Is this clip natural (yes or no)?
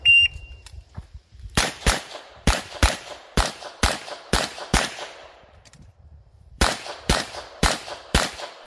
no